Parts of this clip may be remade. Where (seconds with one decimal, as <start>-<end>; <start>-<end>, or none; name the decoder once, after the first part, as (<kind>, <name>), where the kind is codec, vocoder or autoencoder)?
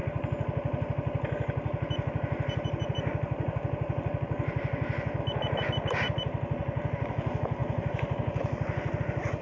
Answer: none